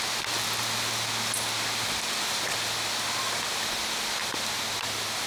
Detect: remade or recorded recorded